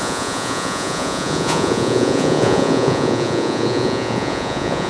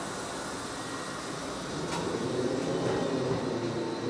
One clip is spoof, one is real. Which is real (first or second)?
second